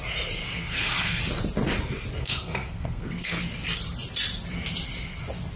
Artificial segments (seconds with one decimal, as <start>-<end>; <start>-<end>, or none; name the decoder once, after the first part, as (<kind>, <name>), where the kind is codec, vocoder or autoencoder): 0.4-1.2 (codec, SNAC); 2.2-3.4